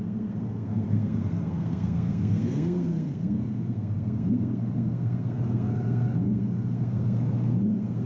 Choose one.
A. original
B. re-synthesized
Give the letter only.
B